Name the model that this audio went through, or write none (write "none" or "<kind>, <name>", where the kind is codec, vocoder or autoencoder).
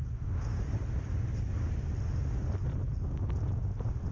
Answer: none